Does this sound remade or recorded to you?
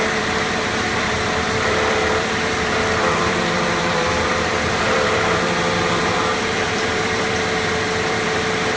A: remade